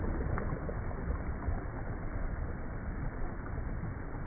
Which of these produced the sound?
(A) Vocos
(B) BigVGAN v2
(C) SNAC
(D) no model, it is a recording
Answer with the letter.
D